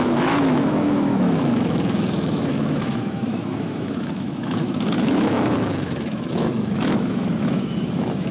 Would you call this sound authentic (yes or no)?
no